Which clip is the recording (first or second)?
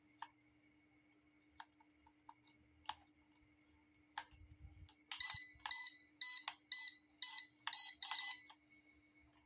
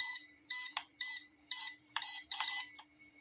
first